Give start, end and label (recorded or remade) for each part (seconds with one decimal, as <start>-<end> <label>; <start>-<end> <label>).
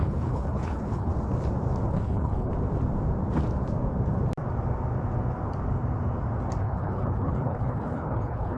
0.0-1.1 remade; 1.1-1.9 recorded; 1.9-2.5 remade; 2.5-6.6 recorded; 6.6-8.6 remade